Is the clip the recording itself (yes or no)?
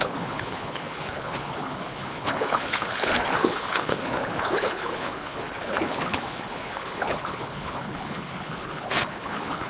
no